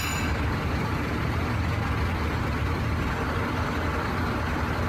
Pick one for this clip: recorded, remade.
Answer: recorded